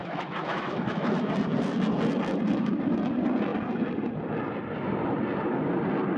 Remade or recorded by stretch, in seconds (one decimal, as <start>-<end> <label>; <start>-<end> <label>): 0.0-1.3 remade; 1.3-6.2 recorded